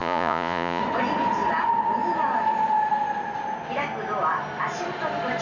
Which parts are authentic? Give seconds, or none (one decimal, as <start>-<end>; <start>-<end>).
0.8-5.4